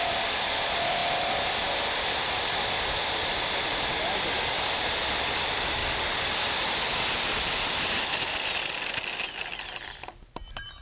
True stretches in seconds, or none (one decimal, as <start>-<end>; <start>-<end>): 0.0-10.8